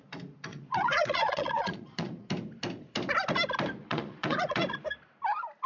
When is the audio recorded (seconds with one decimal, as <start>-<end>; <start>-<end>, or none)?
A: 0.0-0.5; 2.3-3.8; 4.6-5.7